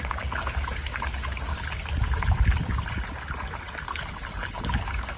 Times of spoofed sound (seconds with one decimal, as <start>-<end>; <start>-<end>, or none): 0.0-1.5; 4.6-5.2